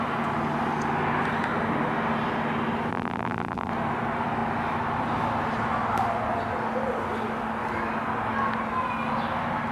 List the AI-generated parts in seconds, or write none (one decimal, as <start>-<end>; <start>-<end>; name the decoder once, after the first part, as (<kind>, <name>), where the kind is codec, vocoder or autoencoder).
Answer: 2.9-3.7 (vocoder, BigVGAN v2)

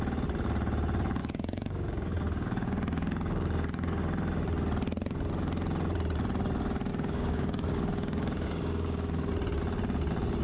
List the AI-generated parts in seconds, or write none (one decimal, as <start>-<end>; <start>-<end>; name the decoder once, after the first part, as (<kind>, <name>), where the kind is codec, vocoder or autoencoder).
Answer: 1.2-4.0 (codec, DAC); 6.9-9.3

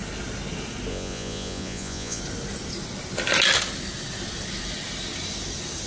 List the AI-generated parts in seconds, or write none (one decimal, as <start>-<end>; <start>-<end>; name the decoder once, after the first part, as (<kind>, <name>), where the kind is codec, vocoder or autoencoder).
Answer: 0.9-2.2 (vocoder, Vocos)

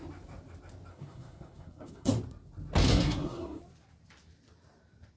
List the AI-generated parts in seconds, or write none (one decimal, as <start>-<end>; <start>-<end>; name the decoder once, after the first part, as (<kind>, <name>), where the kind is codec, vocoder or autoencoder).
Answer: 0.9-2.1 (codec, SNAC); 2.9-3.6

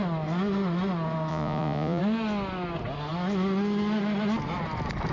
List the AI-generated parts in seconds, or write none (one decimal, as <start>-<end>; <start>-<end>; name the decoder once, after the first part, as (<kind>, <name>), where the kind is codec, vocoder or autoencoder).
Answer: 1.3-2.0 (vocoder, Vocos)

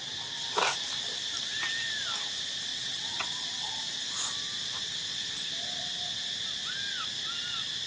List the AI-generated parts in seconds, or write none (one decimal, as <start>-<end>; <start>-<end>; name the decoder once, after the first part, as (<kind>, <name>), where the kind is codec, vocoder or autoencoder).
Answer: 2.7-3.7 (vocoder, WaveNeXt)

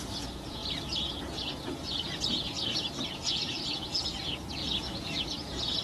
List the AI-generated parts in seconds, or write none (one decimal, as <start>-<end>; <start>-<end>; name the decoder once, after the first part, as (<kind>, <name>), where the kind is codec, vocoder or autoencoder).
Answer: 0.0-5.8 (vocoder, Vocos)

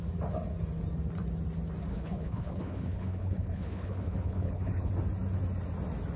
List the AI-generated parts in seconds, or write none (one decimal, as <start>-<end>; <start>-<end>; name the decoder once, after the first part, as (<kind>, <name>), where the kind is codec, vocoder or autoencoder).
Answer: 1.9-4.9 (codec, HILCodec)